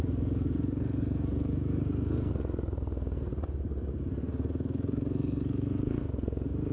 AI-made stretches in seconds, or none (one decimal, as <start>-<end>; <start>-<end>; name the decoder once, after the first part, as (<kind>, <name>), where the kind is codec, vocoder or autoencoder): 0.0-3.3 (codec, SNAC); 4.1-6.7